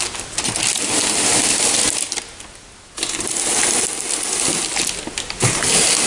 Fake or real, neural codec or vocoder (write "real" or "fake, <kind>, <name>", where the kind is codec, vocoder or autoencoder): real